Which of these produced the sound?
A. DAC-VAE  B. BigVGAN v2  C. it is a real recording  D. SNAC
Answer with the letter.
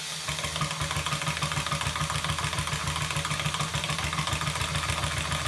C